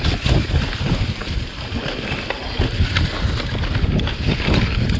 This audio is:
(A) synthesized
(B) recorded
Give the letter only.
B